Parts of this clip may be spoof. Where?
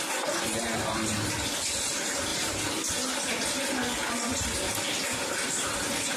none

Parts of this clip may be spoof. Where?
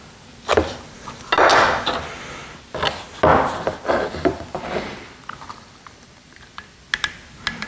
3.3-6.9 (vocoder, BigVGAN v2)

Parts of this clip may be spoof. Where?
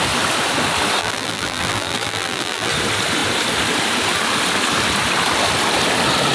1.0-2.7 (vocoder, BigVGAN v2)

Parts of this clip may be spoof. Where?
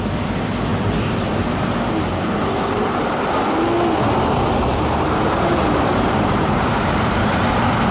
0.7-3.4 (vocoder, BigVGAN v2); 4.7-7.5